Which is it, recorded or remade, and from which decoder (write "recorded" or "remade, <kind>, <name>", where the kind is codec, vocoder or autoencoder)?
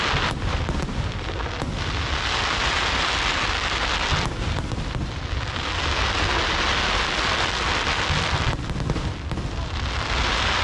recorded